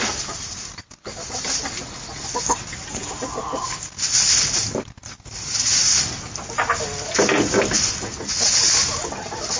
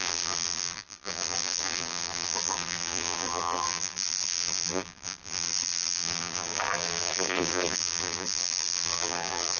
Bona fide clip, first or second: first